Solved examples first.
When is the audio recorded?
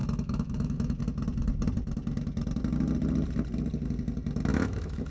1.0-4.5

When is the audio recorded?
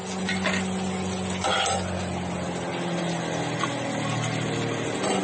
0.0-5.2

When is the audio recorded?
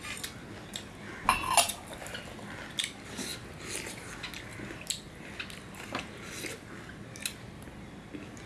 0.0-8.5